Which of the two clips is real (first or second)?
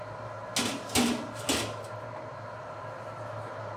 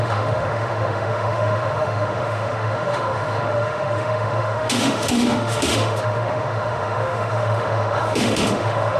first